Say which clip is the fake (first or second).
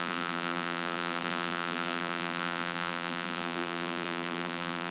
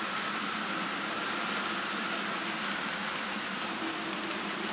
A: first